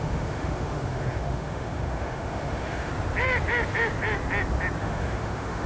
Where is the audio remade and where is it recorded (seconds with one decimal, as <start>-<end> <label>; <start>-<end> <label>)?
0.0-2.9 remade; 2.9-4.8 recorded; 4.8-5.7 remade